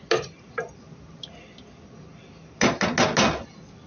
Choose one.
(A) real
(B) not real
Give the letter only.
A